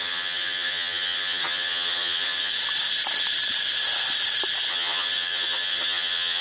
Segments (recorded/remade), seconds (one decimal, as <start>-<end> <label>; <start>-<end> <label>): 0.0-2.5 remade; 2.5-4.7 recorded; 4.7-6.4 remade